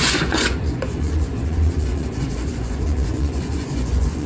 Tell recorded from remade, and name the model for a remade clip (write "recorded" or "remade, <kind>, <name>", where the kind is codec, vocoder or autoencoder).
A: remade, vocoder, Vocos